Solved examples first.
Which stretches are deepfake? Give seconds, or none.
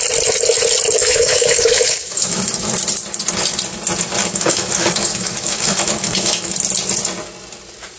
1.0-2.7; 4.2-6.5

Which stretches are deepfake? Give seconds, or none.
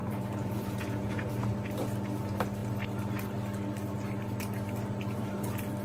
0.0-1.3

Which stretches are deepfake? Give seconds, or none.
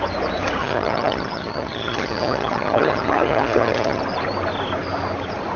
0.6-4.0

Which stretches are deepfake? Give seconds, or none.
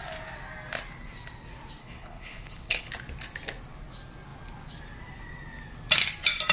1.8-2.9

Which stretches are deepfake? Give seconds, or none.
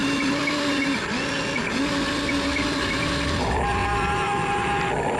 none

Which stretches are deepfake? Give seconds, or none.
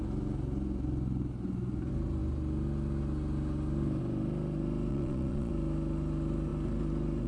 4.9-5.5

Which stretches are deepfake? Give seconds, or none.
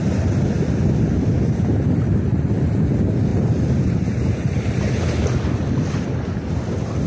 3.3-5.2